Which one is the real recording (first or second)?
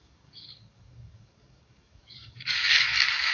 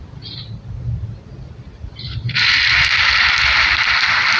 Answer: second